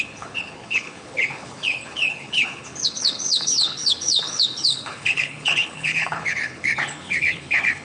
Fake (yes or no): yes